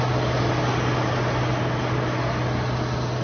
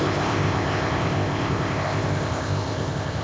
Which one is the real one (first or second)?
first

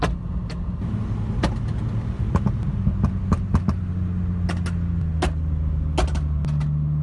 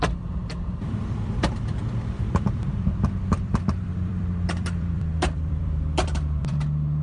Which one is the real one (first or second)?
first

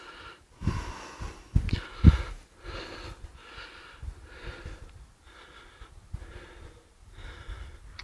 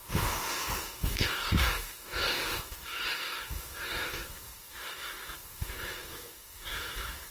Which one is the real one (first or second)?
first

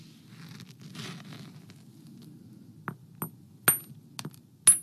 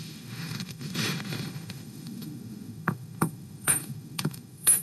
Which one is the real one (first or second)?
first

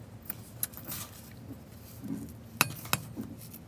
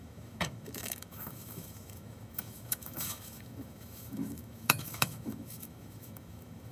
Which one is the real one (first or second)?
first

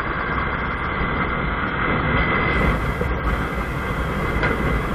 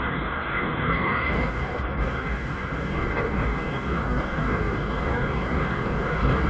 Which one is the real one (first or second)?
first